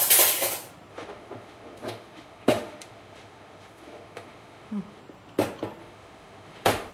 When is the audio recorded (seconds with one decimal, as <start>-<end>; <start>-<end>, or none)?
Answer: 0.0-0.9; 5.0-5.8